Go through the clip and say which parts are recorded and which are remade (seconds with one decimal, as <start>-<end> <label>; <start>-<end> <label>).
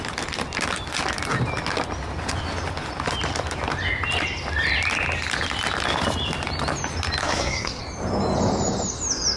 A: 0.0-7.2 recorded; 7.2-7.8 remade; 7.8-9.4 recorded